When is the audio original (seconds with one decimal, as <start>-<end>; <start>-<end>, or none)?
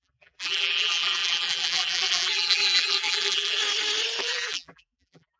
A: 3.6-4.2